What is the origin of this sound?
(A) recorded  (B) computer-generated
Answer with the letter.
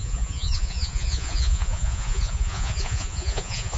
B